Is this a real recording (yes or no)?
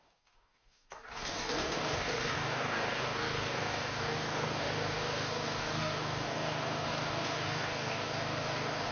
no